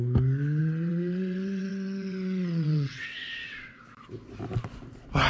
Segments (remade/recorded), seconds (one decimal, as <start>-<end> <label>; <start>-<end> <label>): 0.0-0.6 recorded; 0.6-3.8 remade; 3.8-5.3 recorded